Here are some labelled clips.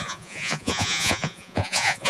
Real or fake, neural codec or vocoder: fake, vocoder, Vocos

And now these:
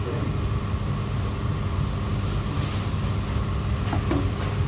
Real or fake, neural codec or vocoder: real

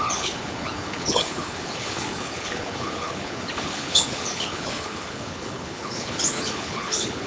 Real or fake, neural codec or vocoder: fake, codec, HILCodec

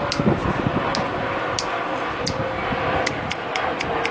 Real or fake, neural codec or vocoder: real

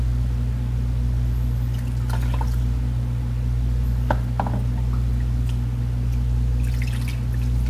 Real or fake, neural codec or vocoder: real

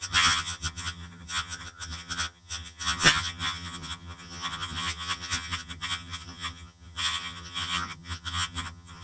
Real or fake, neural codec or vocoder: fake, vocoder, HiFi-GAN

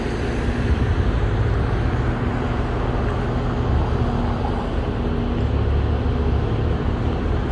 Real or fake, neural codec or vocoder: real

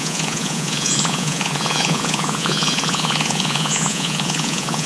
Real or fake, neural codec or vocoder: fake, vocoder, Vocos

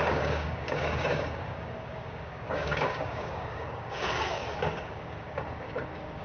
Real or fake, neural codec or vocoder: fake, codec, DAC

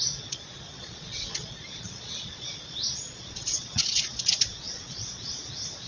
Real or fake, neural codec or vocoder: fake, vocoder, Vocos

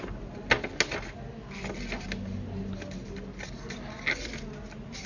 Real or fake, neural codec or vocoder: real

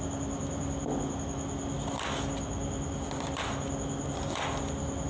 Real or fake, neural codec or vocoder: real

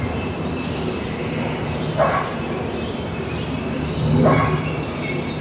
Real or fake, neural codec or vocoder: fake, vocoder, BigVGAN v2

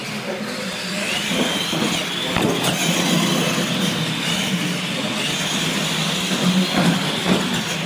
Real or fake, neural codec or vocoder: real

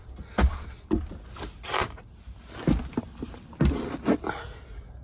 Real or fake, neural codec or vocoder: real